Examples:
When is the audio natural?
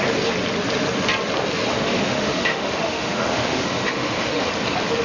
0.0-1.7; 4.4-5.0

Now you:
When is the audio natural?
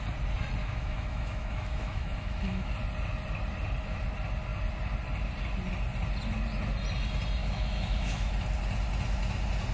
0.0-0.6; 2.7-7.4; 8.3-9.7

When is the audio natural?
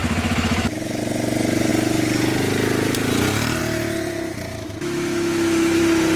1.0-4.5; 5.8-6.2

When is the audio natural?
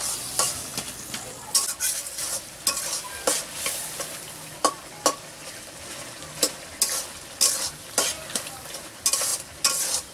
0.0-10.1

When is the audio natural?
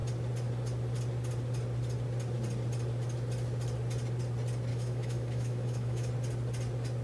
0.0-4.7; 6.1-7.0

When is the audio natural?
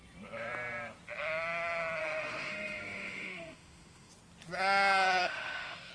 0.0-2.0; 4.1-5.2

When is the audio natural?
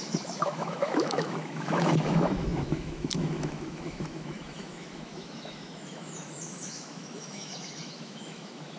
none